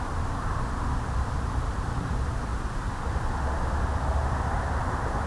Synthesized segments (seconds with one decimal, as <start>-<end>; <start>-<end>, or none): 0.0-2.5; 4.8-5.3